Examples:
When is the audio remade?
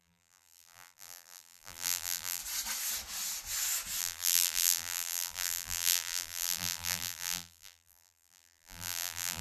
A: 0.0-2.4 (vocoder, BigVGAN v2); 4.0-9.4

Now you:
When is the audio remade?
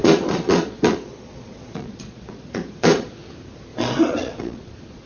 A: 0.0-3.1 (vocoder, Vocos); 3.7-5.1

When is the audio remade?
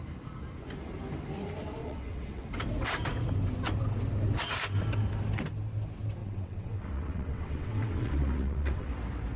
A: 1.8-2.5 (vocoder, WaveNeXt); 6.2-8.9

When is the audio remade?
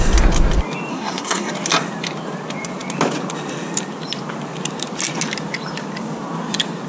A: 0.9-1.5 (codec, SNAC)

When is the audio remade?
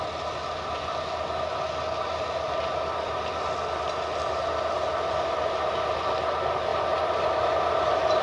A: 6.7-8.2 (vocoder, BigVGAN v2)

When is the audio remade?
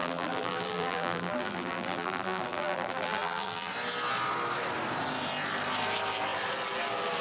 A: 0.0-3.7 (vocoder, BigVGAN v2)